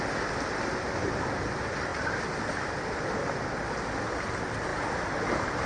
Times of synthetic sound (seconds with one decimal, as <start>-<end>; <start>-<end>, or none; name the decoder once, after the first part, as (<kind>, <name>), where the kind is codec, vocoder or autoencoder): 4.7-5.7 (vocoder, BigVGAN v2)